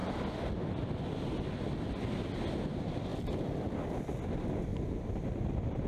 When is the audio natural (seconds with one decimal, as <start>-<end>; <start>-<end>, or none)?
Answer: 0.5-3.1; 4.0-4.7

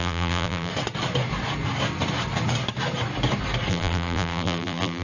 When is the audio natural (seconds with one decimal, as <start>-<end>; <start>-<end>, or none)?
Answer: 0.7-3.7

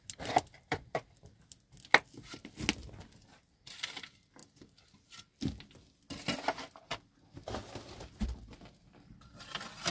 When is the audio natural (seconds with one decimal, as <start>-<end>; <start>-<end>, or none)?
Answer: 0.0-9.9

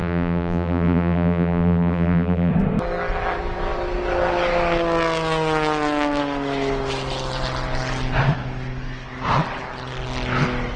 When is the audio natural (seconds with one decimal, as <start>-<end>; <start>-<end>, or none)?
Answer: 2.5-10.8

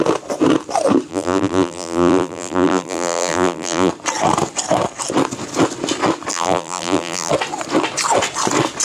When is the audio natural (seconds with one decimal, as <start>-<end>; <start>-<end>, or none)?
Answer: 0.0-1.1; 3.9-6.3; 7.3-8.8